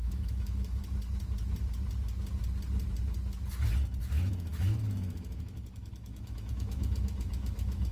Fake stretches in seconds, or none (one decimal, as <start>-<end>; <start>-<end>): 0.0-0.8; 4.0-7.9